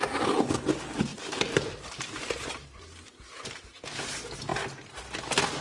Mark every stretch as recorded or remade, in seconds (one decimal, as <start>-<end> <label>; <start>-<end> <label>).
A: 0.0-1.1 recorded; 1.1-3.7 remade; 3.7-5.6 recorded

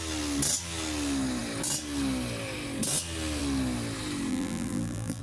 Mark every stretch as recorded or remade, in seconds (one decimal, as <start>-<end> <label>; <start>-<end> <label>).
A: 0.0-4.3 recorded; 4.3-5.2 remade

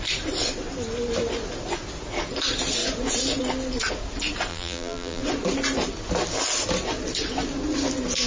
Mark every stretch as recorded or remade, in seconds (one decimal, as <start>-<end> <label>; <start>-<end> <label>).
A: 0.0-4.5 recorded; 4.5-5.2 remade; 5.2-8.3 recorded

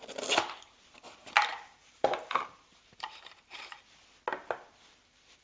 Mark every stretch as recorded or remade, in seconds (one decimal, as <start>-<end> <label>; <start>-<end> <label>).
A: 0.0-1.5 recorded; 1.5-4.0 remade; 4.0-5.4 recorded

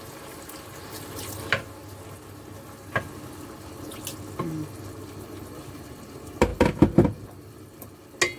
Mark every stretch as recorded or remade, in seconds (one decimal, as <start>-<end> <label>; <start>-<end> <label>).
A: 0.0-8.4 recorded

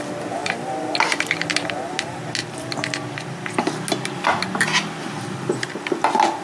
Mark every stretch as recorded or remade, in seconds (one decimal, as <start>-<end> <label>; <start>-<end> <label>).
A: 0.0-0.4 recorded; 0.4-1.7 remade; 1.7-2.4 recorded; 2.4-3.7 remade; 3.7-5.0 recorded; 5.0-5.5 remade; 5.5-6.4 recorded

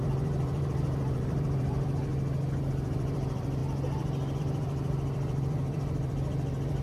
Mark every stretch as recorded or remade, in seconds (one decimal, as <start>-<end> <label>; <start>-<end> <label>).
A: 0.0-2.1 remade; 2.1-2.7 recorded; 2.7-3.6 remade; 3.6-4.4 recorded; 4.4-6.8 remade